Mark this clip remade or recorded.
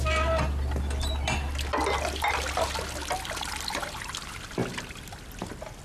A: recorded